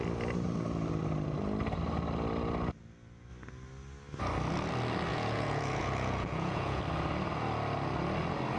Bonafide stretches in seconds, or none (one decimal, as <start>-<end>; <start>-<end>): 0.0-5.1; 6.8-8.6